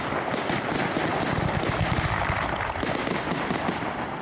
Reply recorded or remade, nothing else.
recorded